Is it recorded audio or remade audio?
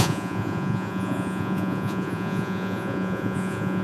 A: remade